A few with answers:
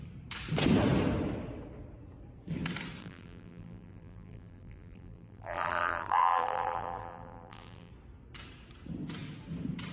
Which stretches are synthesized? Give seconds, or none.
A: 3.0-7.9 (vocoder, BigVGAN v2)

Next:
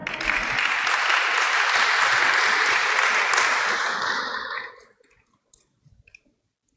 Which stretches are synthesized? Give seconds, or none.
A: none